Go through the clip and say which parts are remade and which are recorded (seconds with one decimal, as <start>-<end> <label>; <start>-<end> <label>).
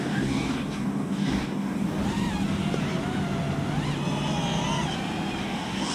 0.0-2.0 remade; 2.0-5.4 recorded; 5.4-5.9 remade